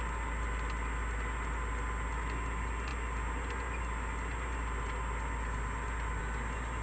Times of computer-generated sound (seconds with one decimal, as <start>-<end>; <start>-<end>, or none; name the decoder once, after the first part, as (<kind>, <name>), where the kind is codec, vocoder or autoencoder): none